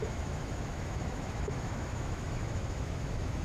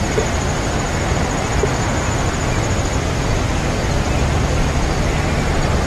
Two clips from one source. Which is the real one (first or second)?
second